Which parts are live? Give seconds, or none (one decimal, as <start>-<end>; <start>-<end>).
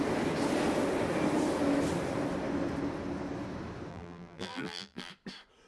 0.0-3.9; 5.1-5.7